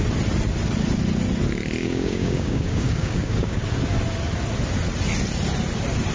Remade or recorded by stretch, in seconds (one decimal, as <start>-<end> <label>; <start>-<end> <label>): 0.0-1.8 recorded; 1.8-3.6 remade; 3.6-6.1 recorded

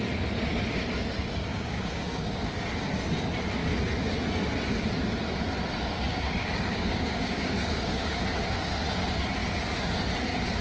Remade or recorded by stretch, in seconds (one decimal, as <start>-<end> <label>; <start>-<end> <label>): 0.0-1.5 recorded; 1.5-2.7 remade; 2.7-6.1 recorded; 6.1-8.2 remade; 8.2-10.6 recorded

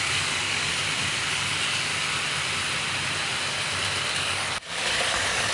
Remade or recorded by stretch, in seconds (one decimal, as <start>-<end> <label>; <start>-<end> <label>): 0.0-0.7 remade; 0.7-1.3 recorded; 1.3-1.9 remade; 1.9-4.1 recorded; 4.1-5.5 remade

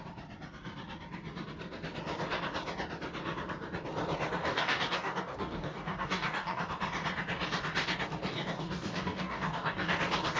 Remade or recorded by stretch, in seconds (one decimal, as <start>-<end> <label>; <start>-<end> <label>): 0.0-4.4 recorded; 4.4-6.6 remade; 6.6-8.3 recorded; 8.3-9.9 remade; 9.9-10.4 recorded

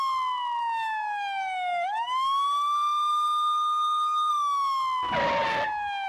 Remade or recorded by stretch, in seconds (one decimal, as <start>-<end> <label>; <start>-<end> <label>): 0.0-0.6 recorded; 0.6-4.3 remade; 4.3-6.1 recorded

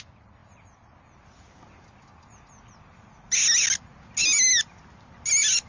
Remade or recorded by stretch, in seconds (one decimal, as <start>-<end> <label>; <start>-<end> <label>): 0.0-5.7 recorded